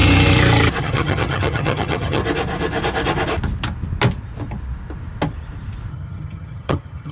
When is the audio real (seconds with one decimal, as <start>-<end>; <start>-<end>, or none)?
0.0-0.8; 2.2-5.9